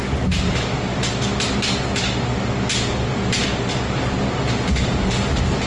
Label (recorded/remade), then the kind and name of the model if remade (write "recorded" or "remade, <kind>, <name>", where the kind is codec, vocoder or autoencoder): recorded